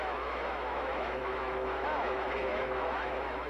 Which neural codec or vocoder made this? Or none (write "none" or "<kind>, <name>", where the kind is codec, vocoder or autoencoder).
autoencoder, DAC-VAE